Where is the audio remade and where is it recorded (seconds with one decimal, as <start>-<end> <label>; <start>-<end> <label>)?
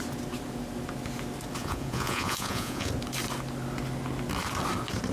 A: 0.0-1.6 recorded; 1.6-2.9 remade; 2.9-5.1 recorded